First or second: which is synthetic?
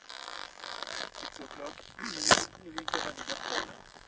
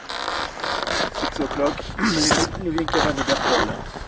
first